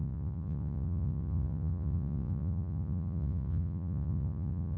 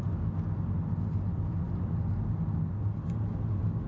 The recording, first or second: second